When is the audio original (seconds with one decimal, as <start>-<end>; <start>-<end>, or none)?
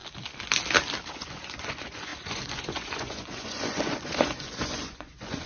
0.0-1.1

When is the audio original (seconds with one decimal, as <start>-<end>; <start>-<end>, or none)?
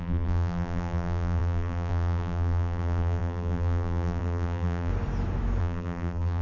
4.9-5.6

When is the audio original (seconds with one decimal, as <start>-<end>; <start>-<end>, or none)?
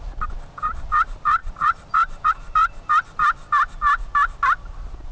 0.0-1.4; 2.4-5.1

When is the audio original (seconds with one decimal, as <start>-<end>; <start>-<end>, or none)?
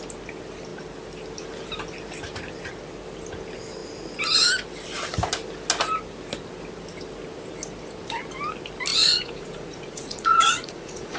0.0-8.9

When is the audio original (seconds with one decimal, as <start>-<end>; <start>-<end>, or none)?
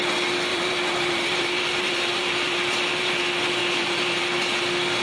0.0-0.5; 3.1-3.6; 4.2-5.0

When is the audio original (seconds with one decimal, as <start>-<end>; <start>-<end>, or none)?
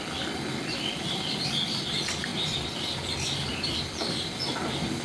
0.0-5.0